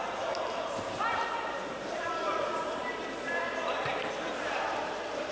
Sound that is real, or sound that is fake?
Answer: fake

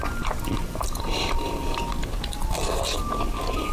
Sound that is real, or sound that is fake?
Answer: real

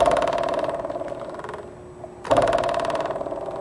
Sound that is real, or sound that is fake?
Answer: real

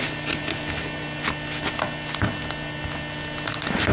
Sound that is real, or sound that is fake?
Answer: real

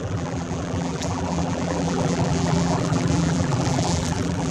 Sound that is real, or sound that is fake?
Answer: fake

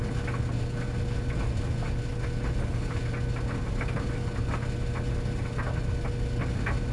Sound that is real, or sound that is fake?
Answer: real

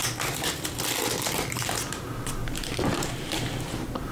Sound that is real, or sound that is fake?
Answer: fake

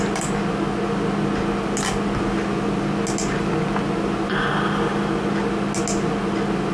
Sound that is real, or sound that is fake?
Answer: real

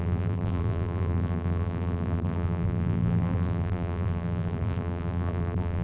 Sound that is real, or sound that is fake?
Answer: fake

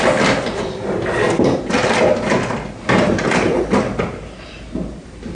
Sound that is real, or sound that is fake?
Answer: real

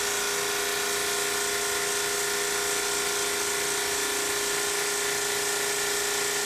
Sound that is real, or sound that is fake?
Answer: real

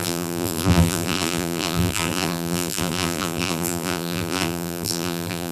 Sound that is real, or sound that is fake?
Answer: fake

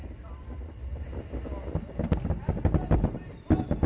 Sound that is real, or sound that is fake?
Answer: real